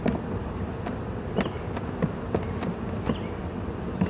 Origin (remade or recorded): recorded